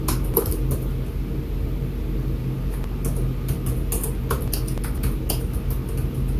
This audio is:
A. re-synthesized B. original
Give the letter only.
B